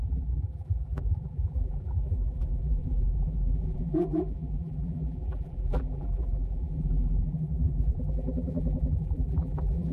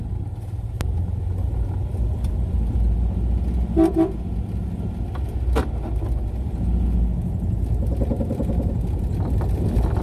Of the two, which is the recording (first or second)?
second